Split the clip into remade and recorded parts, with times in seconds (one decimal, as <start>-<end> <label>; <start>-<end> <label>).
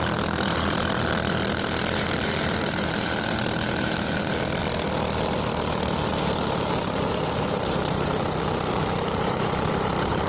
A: 0.0-4.6 remade; 4.6-6.1 recorded; 6.1-10.3 remade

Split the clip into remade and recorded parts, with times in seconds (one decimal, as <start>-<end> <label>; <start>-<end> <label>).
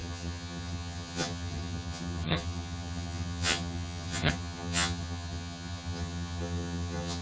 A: 0.0-7.2 remade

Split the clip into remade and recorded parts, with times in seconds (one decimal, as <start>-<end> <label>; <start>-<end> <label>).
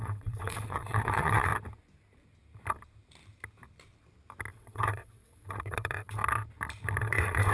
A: 0.0-1.5 remade; 1.5-4.5 recorded; 4.5-6.2 remade; 6.2-7.0 recorded; 7.0-7.5 remade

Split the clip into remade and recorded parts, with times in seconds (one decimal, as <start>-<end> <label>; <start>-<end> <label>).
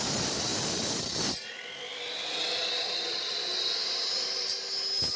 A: 0.0-5.2 recorded